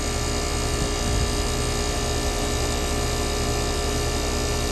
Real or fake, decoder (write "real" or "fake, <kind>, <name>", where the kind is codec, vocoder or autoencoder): real